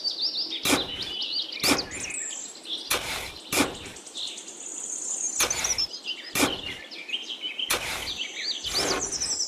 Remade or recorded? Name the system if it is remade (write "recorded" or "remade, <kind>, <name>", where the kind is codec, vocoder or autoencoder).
recorded